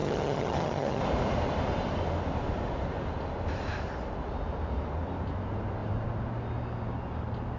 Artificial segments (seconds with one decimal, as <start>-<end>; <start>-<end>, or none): 0.0-1.0